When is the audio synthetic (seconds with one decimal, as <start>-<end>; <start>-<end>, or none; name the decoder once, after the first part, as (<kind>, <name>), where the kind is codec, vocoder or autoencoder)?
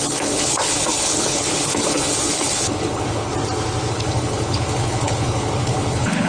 0.0-3.3 (codec, HILCodec); 3.9-6.3